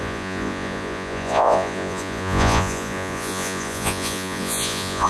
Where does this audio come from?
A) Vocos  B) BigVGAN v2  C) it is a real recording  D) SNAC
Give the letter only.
A